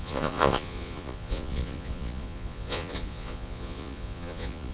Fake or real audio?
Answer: fake